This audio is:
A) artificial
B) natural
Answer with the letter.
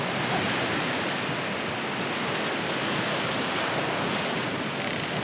B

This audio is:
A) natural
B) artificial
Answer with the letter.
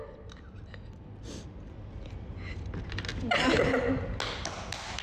A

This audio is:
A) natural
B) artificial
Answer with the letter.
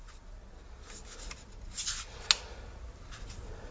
A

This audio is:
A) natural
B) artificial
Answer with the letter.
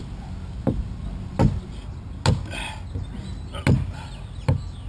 A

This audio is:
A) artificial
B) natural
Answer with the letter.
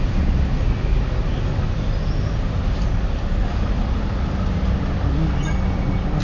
B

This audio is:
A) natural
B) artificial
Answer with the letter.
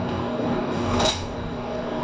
B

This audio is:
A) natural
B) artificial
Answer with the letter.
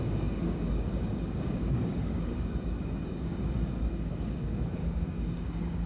B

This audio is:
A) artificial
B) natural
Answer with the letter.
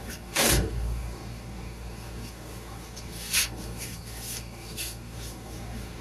A